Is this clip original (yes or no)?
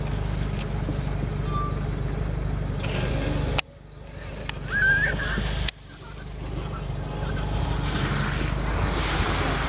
yes